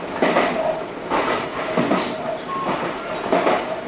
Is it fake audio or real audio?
real